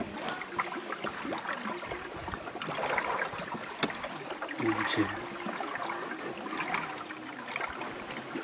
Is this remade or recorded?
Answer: recorded